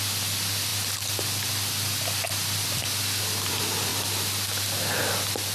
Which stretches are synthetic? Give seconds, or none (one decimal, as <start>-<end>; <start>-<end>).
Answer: 3.9-5.0